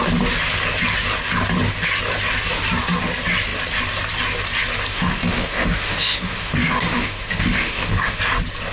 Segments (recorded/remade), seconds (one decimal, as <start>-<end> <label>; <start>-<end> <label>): 0.0-4.9 recorded; 4.9-8.2 remade; 8.2-8.7 recorded